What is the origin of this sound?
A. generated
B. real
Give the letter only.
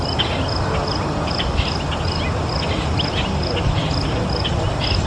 B